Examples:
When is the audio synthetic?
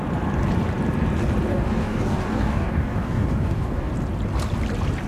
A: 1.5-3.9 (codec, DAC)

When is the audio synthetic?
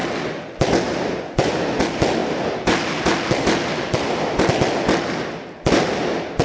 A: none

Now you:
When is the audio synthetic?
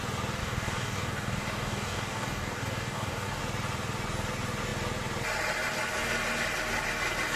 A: 0.4-3.4 (codec, DAC)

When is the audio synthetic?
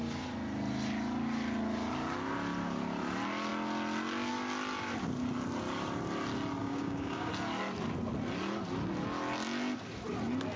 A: 6.6-7.3 (codec, DAC)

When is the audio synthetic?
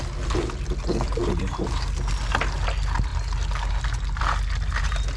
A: none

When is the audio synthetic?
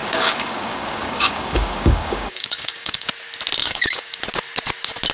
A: 0.0-3.1 (codec, DAC); 3.6-4.2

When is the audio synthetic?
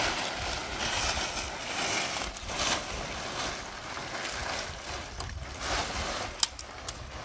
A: none